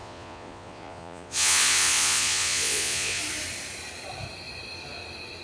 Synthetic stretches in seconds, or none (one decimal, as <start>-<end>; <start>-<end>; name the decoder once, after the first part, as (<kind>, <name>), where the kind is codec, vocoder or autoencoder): 0.0-3.2 (vocoder, Vocos)